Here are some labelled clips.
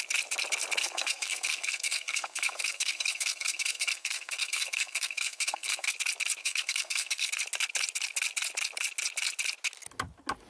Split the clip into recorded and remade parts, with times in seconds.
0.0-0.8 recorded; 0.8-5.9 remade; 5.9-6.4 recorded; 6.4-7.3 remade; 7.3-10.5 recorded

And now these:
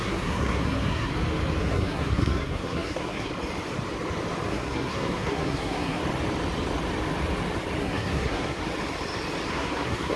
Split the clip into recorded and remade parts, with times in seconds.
0.0-1.1 remade; 1.1-1.6 recorded; 1.6-3.3 remade; 3.3-4.5 recorded; 4.5-6.0 remade; 6.0-7.8 recorded; 7.8-8.6 remade; 8.6-9.5 recorded; 9.5-10.2 remade

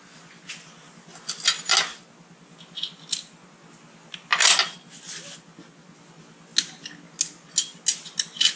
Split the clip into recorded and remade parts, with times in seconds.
0.0-8.6 recorded

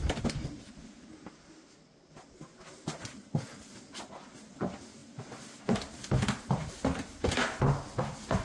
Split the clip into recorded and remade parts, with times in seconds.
0.0-8.4 recorded

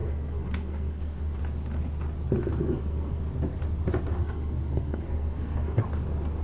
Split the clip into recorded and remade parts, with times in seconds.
0.0-1.4 remade; 1.4-2.6 recorded; 2.6-3.2 remade; 3.2-4.2 recorded; 4.2-5.8 remade; 5.8-6.4 recorded

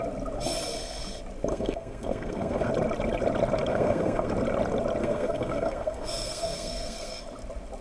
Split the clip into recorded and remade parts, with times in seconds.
0.0-1.5 recorded; 1.5-2.7 remade; 2.7-3.7 recorded; 3.7-4.3 remade; 4.3-5.0 recorded; 5.0-7.2 remade; 7.2-7.8 recorded

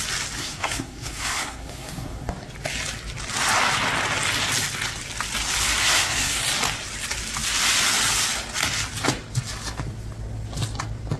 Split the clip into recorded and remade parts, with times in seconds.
0.0-0.4 recorded; 0.4-2.3 remade; 2.3-5.8 recorded; 5.8-6.4 remade; 6.4-11.2 recorded

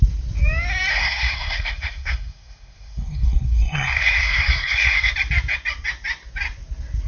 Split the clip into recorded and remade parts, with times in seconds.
0.0-0.9 recorded; 0.9-5.1 remade; 5.1-7.1 recorded